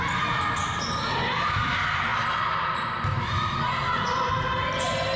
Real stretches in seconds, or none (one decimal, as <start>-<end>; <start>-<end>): 0.0-5.2